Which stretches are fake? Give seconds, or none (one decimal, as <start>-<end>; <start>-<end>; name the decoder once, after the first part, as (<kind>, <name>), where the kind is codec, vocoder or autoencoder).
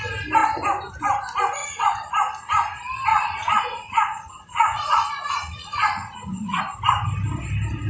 1.6-2.1 (vocoder, Vocos); 3.1-6.6